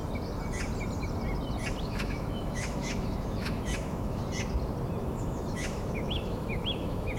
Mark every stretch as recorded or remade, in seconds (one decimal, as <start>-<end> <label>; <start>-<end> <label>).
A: 0.0-1.8 recorded; 1.8-4.2 remade; 4.2-5.0 recorded; 5.0-7.2 remade